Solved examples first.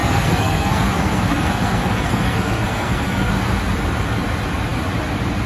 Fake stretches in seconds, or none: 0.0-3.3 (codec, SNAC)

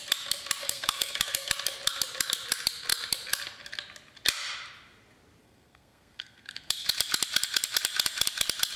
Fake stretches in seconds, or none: 0.6-1.5 (codec, SNAC); 5.4-6.9